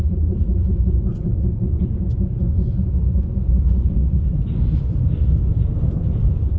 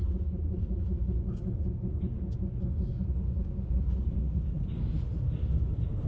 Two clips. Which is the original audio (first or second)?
second